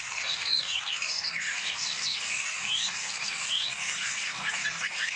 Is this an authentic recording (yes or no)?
no